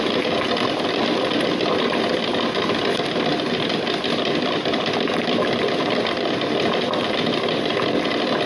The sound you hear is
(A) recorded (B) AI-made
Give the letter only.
A